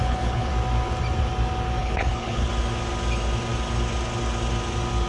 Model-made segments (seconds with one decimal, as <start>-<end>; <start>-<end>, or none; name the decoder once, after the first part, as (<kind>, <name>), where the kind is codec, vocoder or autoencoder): 0.0-0.5 (codec, HILCodec); 1.8-2.5